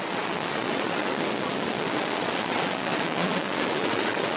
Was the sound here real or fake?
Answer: fake